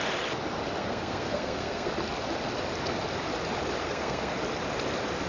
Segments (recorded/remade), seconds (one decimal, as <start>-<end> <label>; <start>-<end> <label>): 0.0-0.8 recorded; 0.8-1.9 remade; 1.9-3.8 recorded; 3.8-4.3 remade; 4.3-5.3 recorded